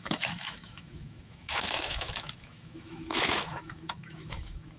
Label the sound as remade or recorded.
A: remade